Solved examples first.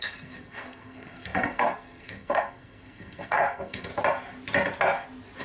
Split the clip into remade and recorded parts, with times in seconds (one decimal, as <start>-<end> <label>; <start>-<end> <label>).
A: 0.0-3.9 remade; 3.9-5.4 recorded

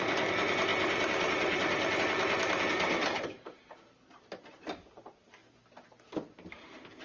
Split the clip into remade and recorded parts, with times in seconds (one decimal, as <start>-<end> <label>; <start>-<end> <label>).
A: 0.0-7.0 recorded

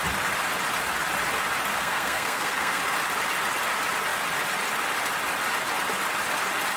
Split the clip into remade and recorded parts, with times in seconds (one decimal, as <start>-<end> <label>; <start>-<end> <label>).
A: 0.0-1.7 recorded; 1.7-2.8 remade; 2.8-6.8 recorded

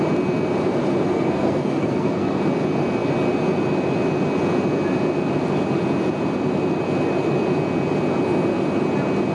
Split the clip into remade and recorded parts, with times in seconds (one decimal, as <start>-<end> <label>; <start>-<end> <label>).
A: 0.0-1.1 recorded; 1.1-2.4 remade; 2.4-9.3 recorded

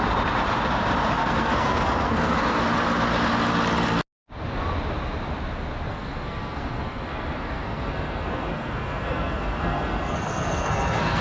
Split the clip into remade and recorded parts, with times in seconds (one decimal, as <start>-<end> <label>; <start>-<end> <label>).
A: 0.0-1.2 recorded; 1.2-2.6 remade; 2.6-5.9 recorded; 5.9-11.2 remade

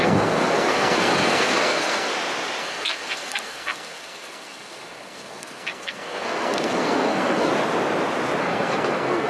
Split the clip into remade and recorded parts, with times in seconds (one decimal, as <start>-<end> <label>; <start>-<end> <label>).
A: 0.0-2.1 remade; 2.1-2.6 recorded; 2.6-7.5 remade; 7.5-8.4 recorded; 8.4-9.3 remade